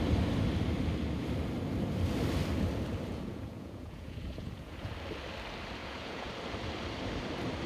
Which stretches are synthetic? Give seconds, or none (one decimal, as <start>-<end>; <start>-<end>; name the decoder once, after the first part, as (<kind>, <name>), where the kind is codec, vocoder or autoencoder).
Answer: 3.1-4.9 (vocoder, Vocos); 5.8-6.3

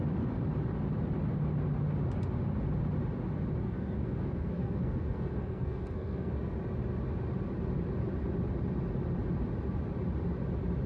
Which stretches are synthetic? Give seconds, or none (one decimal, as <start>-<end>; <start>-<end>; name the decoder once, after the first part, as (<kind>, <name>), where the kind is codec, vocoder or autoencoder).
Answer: 3.6-6.3 (codec, SNAC)

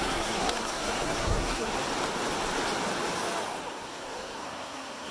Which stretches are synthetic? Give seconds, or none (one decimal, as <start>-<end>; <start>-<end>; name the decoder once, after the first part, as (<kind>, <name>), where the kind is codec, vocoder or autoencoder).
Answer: 0.0-1.7 (codec, SNAC); 3.7-5.1

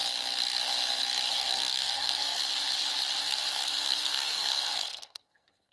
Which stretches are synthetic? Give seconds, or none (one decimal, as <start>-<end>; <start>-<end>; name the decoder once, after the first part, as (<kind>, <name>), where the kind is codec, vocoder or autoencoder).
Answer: 1.3-2.4 (codec, SNAC); 3.2-5.7

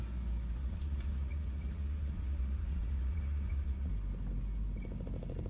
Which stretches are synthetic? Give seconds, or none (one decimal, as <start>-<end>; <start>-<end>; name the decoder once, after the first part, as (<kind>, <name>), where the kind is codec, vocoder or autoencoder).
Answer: 0.6-3.9 (vocoder, Vocos)

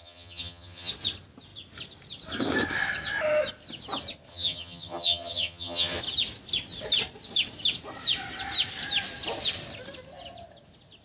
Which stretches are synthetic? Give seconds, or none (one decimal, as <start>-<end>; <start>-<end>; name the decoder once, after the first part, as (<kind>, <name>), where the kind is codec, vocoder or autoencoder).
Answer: 0.0-0.9 (vocoder, HiFi-GAN); 4.3-6.0

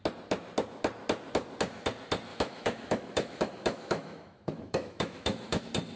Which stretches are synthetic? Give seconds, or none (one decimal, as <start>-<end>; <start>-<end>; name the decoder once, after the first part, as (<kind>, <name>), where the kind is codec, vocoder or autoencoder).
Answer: 2.3-5.6 (autoencoder, DAC-VAE)